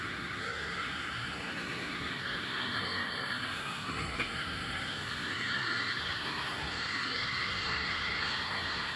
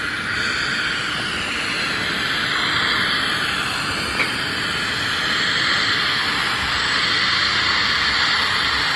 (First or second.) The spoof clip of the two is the first